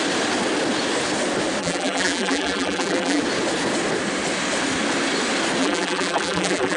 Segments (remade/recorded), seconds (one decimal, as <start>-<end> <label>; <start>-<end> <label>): 0.0-1.6 recorded; 1.6-3.2 remade; 3.2-5.6 recorded; 5.6-6.8 remade